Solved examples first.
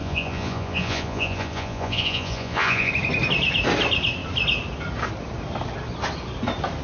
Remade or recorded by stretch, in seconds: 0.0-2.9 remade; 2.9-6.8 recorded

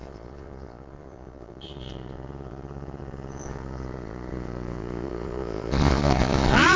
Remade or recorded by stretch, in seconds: 0.0-6.8 remade

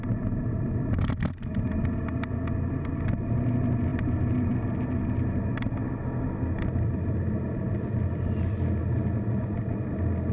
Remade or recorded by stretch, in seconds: 0.0-10.3 recorded

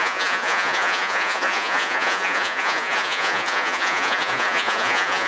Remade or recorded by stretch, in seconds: 0.0-5.3 remade

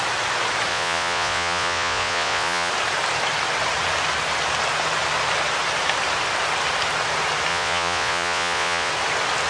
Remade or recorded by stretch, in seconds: 0.0-0.7 recorded; 0.7-2.7 remade; 2.7-7.5 recorded; 7.5-8.9 remade; 8.9-9.5 recorded

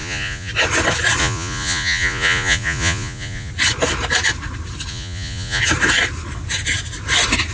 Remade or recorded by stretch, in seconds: 0.0-0.5 remade; 0.5-1.2 recorded; 1.2-3.5 remade; 3.5-4.9 recorded; 4.9-5.6 remade; 5.6-7.5 recorded

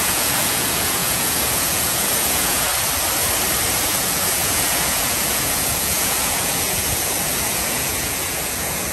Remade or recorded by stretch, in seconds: 0.0-2.7 remade; 2.7-3.8 recorded; 3.8-8.9 remade

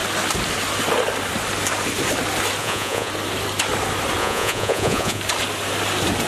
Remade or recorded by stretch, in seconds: 0.0-2.6 recorded; 2.6-3.1 remade; 3.1-4.2 recorded; 4.2-5.2 remade; 5.2-6.3 recorded